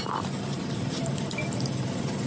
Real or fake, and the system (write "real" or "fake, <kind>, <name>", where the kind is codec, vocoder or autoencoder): real